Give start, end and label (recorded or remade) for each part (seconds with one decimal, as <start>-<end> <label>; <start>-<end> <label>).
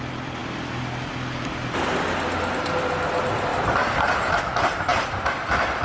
0.0-3.5 recorded; 3.5-4.4 remade; 4.4-4.9 recorded; 4.9-5.8 remade